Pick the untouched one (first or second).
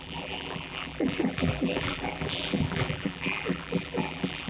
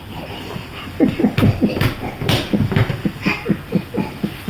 second